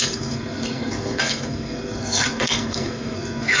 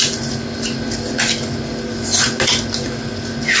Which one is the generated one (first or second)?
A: first